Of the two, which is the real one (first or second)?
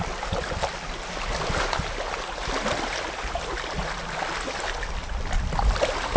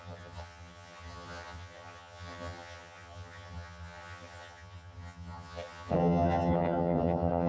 first